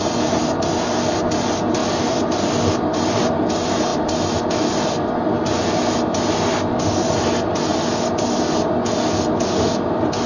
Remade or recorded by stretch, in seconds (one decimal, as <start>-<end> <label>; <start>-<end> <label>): 0.0-10.3 recorded